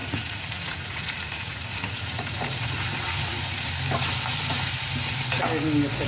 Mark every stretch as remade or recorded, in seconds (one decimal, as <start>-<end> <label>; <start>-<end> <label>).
0.0-3.7 remade; 3.7-6.1 recorded